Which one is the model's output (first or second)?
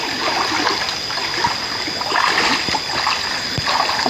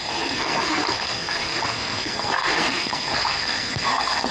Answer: second